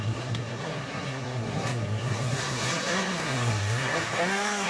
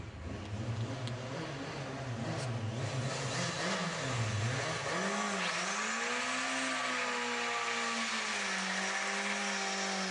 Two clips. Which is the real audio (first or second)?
second